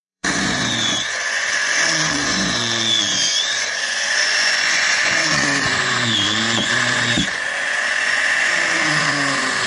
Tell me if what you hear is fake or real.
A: fake